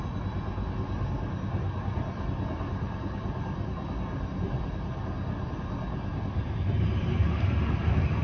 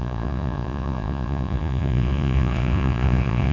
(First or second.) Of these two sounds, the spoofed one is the second